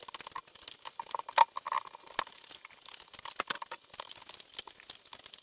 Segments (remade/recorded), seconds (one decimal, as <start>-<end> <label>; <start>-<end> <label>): 0.0-5.4 recorded